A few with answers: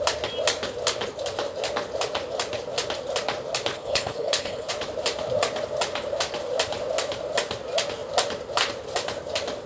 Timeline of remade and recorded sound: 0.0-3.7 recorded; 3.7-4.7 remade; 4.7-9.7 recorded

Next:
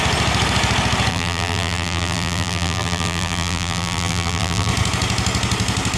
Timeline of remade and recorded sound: 0.0-1.1 recorded; 1.1-4.7 remade; 4.7-6.0 recorded

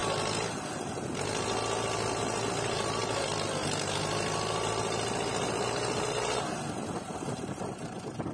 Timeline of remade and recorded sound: 0.0-8.3 recorded

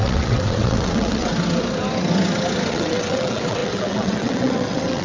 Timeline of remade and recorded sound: 0.0-1.3 remade; 1.3-2.7 recorded; 2.7-5.0 remade

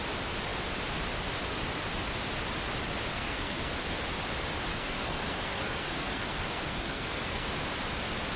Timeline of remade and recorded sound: 0.0-3.1 recorded; 3.1-3.7 remade; 3.7-4.7 recorded; 4.7-7.5 remade; 7.5-8.4 recorded

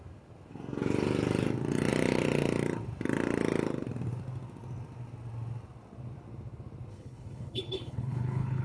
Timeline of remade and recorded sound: 0.0-6.9 recorded; 6.9-8.6 remade

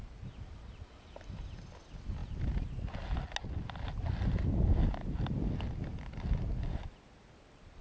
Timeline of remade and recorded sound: 0.0-7.8 recorded